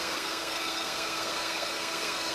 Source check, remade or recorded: remade